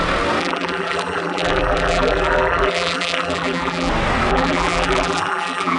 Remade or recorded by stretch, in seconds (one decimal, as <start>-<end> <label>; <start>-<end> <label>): 0.0-0.4 recorded; 0.4-3.9 remade; 3.9-4.3 recorded; 4.3-5.8 remade